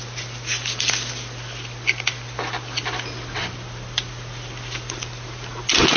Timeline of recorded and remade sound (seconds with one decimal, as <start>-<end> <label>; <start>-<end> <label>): 0.0-6.0 recorded